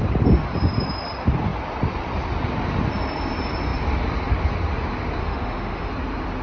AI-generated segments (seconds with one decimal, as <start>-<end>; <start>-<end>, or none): 5.2-5.9